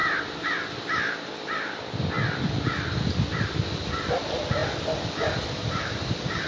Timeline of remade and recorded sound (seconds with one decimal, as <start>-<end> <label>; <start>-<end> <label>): 0.0-6.5 recorded